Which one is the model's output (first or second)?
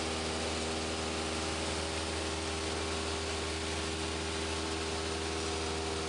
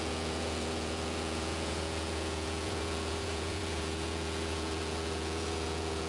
second